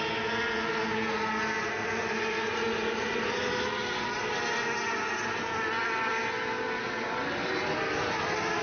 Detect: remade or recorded recorded